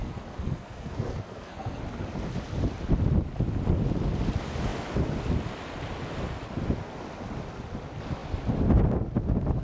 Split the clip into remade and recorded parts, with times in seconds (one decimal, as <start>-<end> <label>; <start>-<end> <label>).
0.0-1.8 remade; 1.8-9.6 recorded